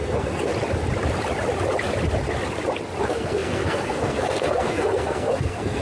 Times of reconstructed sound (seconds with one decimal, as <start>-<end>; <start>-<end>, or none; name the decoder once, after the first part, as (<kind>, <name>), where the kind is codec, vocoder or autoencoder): 0.0-0.5 (codec, SNAC); 3.0-5.8